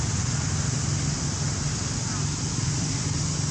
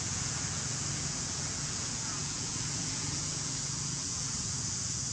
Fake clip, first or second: second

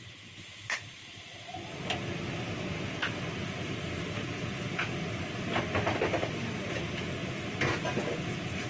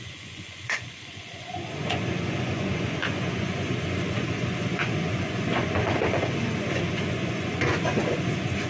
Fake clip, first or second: second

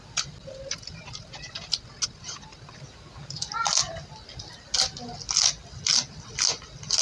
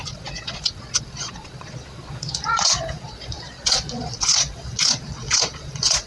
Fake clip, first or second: second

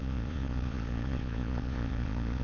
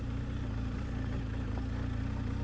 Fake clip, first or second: first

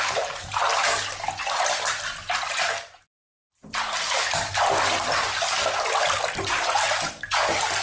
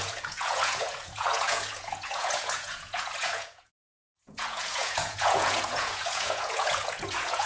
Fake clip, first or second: second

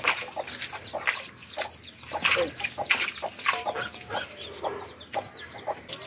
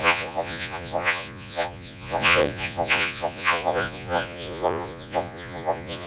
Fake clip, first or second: second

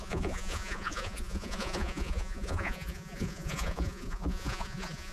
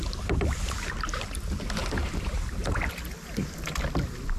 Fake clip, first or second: first